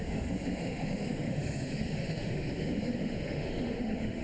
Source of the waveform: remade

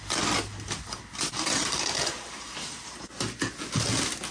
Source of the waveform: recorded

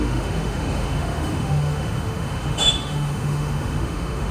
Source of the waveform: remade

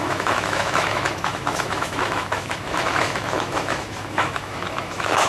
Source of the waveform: remade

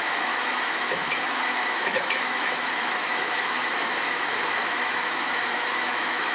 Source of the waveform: remade